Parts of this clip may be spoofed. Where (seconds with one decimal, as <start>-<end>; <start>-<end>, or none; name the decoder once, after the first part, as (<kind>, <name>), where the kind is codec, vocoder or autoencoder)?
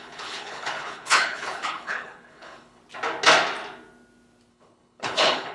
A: 0.0-2.8 (codec, HILCodec); 4.5-5.5